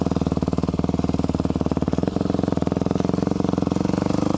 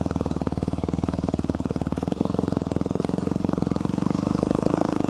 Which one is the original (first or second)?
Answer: first